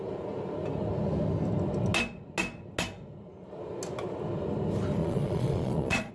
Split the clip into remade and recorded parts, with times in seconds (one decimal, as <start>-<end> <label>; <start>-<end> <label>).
0.0-5.0 recorded; 5.0-6.1 remade